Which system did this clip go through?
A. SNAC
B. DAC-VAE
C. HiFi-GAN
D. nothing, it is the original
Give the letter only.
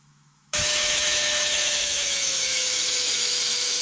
B